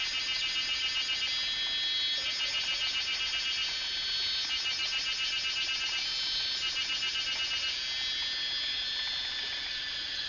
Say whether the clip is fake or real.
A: real